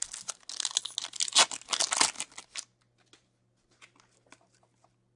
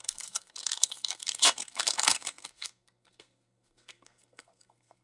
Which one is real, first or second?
first